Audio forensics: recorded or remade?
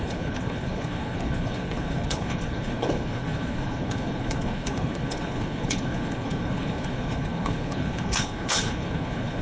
remade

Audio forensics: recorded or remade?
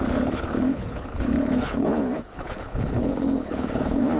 remade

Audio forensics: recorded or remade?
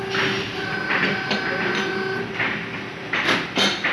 recorded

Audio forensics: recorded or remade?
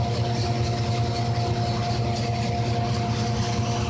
recorded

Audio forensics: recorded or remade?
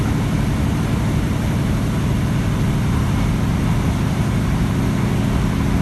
recorded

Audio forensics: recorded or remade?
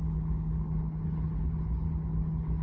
remade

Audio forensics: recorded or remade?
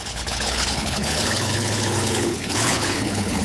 remade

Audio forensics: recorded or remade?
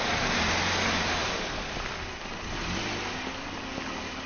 recorded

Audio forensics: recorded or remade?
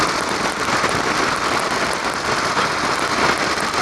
recorded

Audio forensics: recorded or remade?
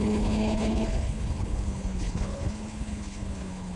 remade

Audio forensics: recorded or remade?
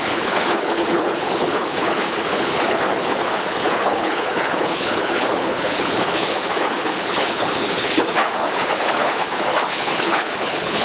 remade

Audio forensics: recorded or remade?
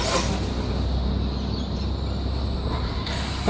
recorded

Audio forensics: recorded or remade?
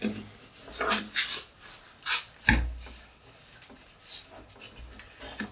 recorded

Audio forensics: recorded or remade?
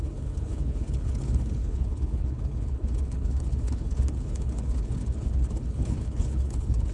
remade